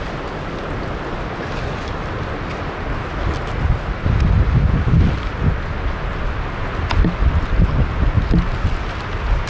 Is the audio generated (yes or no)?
no